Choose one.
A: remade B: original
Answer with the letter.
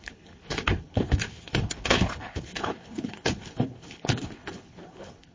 A